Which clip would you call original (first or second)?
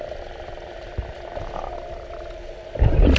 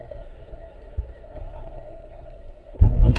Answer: first